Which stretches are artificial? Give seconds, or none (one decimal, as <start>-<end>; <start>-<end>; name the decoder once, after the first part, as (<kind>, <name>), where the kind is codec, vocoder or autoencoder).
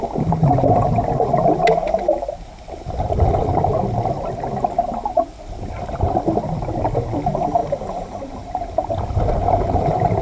7.6-8.9 (vocoder, BigVGAN v2); 9.4-10.2